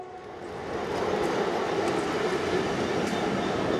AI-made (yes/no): no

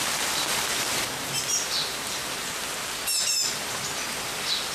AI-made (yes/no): no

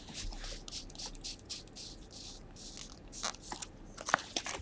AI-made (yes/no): no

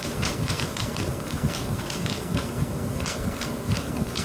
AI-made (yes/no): yes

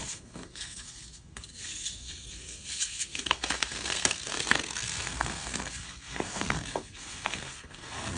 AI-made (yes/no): yes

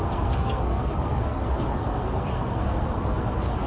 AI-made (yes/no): yes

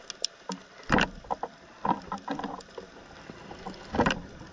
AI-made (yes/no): no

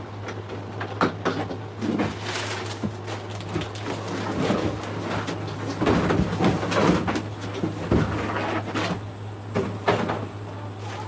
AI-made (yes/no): no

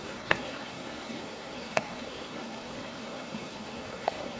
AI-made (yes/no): yes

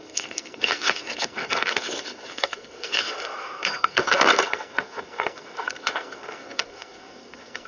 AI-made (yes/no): yes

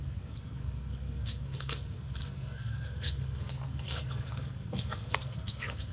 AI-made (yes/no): yes